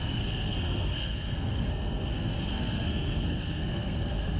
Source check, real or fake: fake